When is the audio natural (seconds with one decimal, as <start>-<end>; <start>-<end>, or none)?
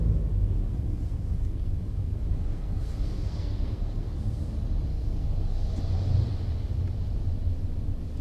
0.0-0.4; 4.5-4.9; 5.8-8.2